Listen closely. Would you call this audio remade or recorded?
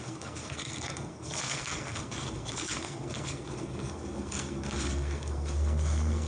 remade